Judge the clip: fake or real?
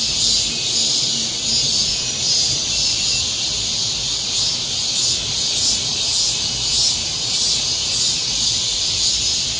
real